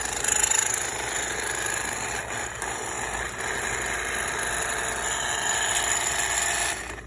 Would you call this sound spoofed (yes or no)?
no